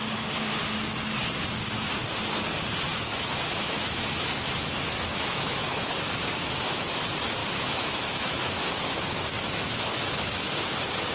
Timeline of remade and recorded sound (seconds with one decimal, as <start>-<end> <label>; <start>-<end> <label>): 0.0-2.9 recorded; 2.9-6.9 remade; 6.9-7.4 recorded; 7.4-10.4 remade; 10.4-11.1 recorded